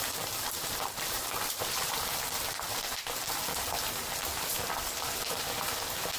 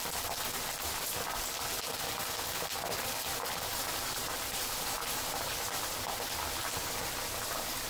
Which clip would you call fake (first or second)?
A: first